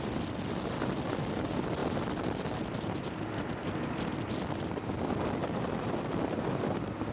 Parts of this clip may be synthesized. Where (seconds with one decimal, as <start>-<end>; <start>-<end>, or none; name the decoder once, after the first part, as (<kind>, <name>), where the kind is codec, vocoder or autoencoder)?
none